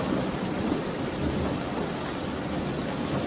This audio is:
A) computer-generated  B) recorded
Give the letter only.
B